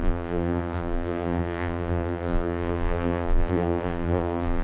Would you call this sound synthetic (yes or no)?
yes